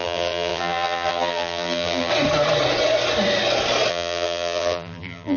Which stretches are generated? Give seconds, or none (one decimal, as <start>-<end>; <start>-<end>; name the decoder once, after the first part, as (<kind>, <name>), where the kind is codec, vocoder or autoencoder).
0.0-2.1 (vocoder, BigVGAN v2); 3.9-5.4